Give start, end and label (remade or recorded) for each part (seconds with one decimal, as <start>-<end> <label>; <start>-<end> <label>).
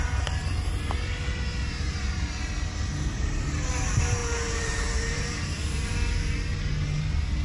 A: 0.0-0.4 remade; 0.4-1.7 recorded; 1.7-7.4 remade